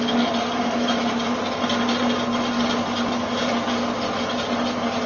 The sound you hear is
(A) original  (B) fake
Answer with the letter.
A